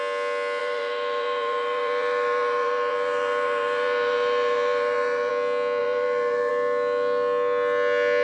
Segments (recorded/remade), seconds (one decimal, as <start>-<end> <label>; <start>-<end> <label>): 0.0-0.6 recorded; 0.6-5.3 remade; 5.3-5.8 recorded; 5.8-6.5 remade; 6.5-8.2 recorded